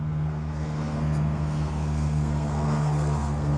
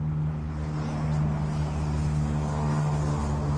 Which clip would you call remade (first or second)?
first